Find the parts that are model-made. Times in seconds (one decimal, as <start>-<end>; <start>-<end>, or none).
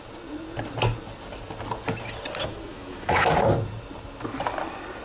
2.5-3.3